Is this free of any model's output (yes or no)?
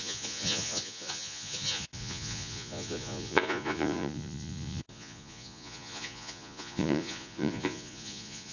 no